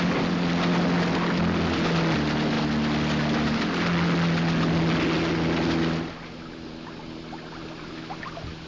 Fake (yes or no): no